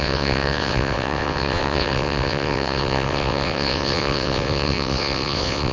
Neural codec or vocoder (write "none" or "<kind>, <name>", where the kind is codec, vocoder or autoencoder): vocoder, WaveNeXt